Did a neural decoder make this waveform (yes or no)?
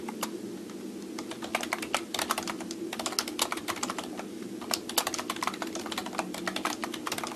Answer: no